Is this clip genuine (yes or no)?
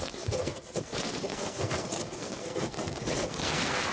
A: no